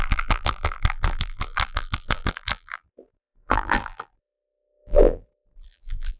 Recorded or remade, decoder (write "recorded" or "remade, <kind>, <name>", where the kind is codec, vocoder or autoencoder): remade, vocoder, BigVGAN v2